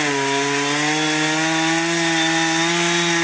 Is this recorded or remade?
recorded